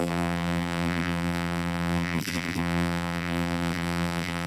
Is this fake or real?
fake